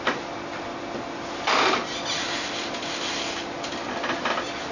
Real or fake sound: real